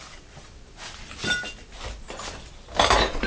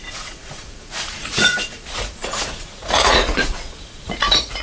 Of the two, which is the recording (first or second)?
first